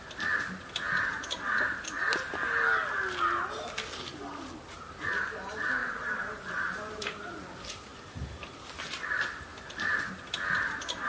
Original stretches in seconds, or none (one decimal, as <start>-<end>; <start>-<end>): 0.0-5.8; 7.2-7.9; 8.5-9.5; 10.1-11.1

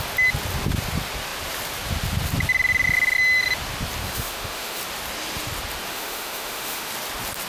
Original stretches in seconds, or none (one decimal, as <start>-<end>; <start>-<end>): 0.0-4.0; 4.8-5.9; 6.9-7.5

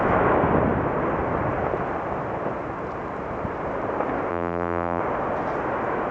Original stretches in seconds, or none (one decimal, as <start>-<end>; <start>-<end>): 0.0-4.3; 5.0-6.1

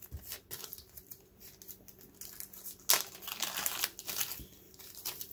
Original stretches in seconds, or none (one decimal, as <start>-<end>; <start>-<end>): 0.0-5.3

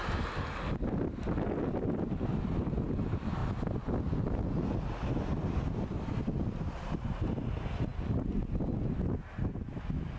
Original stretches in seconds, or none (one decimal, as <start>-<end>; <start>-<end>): 0.0-10.2

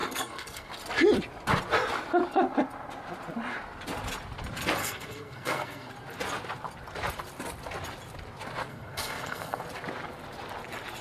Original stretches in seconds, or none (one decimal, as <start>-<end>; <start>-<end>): 0.7-4.8; 5.9-8.7; 9.6-11.0